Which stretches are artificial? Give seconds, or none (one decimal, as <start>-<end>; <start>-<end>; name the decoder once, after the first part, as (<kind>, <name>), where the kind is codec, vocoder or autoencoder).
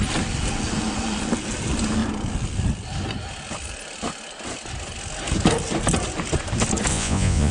6.9-7.5 (vocoder, Vocos)